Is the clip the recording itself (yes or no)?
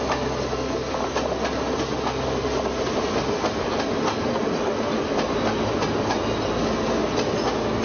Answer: yes